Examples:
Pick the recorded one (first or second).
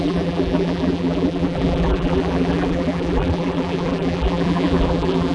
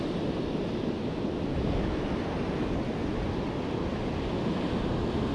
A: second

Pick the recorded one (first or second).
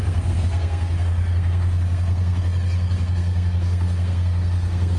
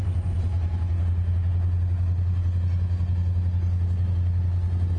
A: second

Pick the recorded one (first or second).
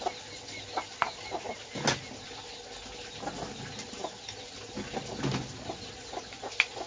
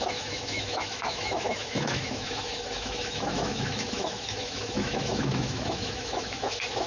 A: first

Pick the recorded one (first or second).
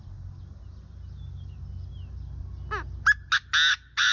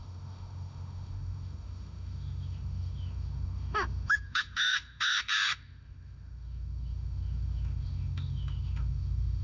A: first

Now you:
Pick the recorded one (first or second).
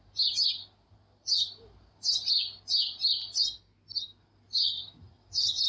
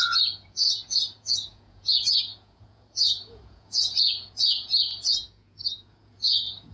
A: first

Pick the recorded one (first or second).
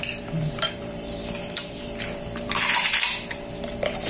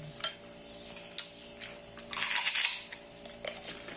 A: second